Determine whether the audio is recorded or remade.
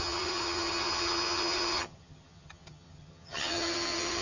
remade